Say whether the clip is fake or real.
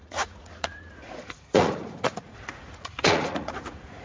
fake